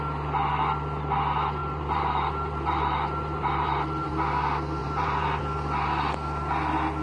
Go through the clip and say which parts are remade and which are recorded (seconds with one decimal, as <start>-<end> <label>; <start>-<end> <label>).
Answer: 0.0-1.6 recorded; 1.6-4.1 remade; 4.1-4.8 recorded; 4.8-5.4 remade; 5.4-7.0 recorded